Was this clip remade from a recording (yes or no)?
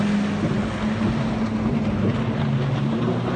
no